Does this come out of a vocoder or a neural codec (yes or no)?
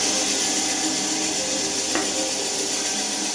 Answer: no